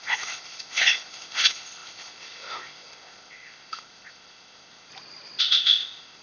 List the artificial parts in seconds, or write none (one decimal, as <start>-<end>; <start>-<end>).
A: 0.0-4.9; 5.4-6.2